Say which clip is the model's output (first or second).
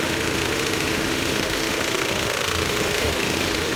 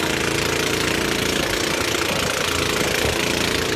first